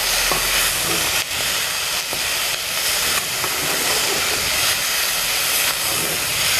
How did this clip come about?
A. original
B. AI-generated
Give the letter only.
A